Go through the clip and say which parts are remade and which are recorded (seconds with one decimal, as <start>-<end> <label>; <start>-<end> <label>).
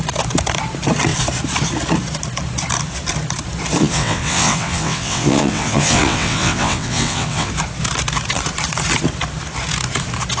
0.0-3.8 recorded; 3.8-7.5 remade; 7.5-10.4 recorded